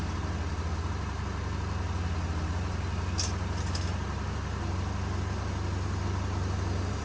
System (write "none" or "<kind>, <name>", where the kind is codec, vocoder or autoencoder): none